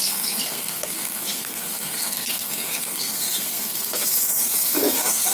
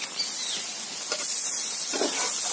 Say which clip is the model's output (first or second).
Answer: first